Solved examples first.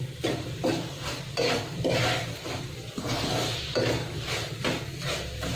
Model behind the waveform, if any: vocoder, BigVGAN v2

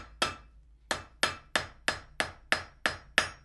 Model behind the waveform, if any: none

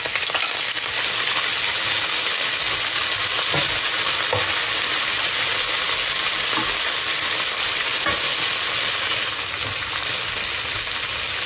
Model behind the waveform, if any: none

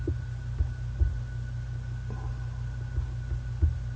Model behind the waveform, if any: none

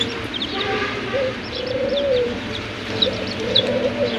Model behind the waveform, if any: vocoder, BigVGAN v2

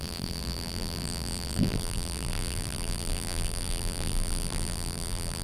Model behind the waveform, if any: vocoder, BigVGAN v2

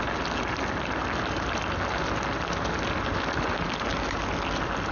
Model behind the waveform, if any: none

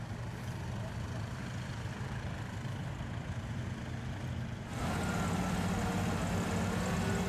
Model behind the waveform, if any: none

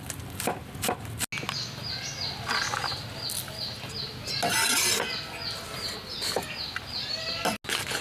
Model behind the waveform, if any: none